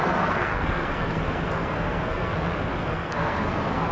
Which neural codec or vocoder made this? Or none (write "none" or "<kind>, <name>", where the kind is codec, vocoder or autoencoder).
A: codec, SNAC